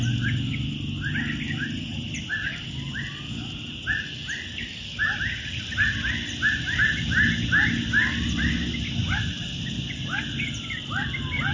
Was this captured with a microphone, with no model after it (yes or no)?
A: yes